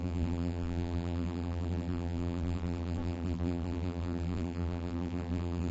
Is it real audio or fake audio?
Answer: fake